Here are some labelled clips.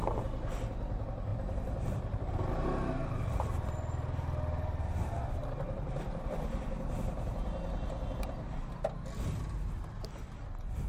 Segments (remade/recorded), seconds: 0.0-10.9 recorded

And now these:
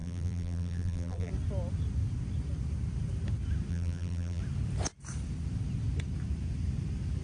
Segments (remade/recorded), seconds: 0.0-1.3 remade; 1.3-3.7 recorded; 3.7-4.4 remade; 4.4-7.2 recorded

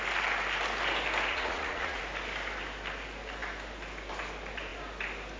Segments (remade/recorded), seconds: 0.0-1.3 recorded; 1.3-2.0 remade; 2.0-5.4 recorded